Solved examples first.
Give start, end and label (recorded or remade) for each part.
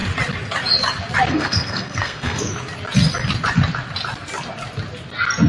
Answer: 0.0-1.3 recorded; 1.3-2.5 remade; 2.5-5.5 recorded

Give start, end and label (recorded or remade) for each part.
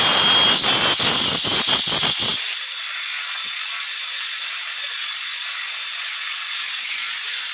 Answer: 0.0-7.5 recorded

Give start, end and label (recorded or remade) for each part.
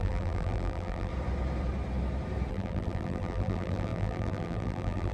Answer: 0.0-1.1 remade; 1.1-2.5 recorded; 2.5-5.1 remade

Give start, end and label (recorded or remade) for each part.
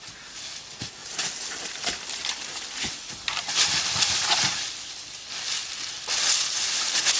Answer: 0.0-1.0 recorded; 1.0-5.3 remade; 5.3-7.2 recorded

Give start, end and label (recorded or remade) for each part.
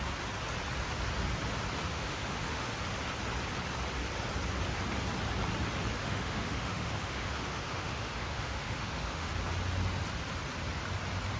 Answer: 0.0-1.9 recorded; 1.9-2.7 remade; 2.7-6.0 recorded; 6.0-9.3 remade; 9.3-11.4 recorded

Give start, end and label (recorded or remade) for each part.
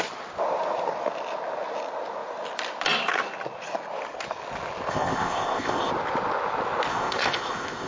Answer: 0.0-4.9 recorded; 4.9-5.9 remade; 5.9-6.9 recorded; 6.9-7.9 remade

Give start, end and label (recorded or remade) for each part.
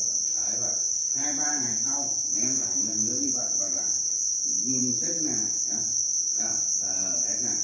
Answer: 0.0-2.3 recorded; 2.3-3.3 remade; 3.3-7.6 recorded